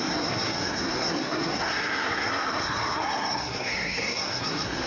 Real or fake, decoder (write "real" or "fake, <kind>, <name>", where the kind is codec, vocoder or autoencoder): fake, codec, SNAC